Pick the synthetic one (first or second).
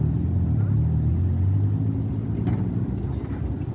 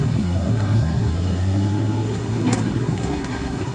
second